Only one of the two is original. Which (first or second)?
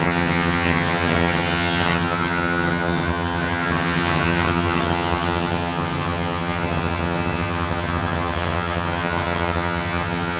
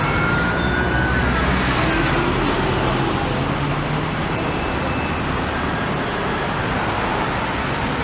second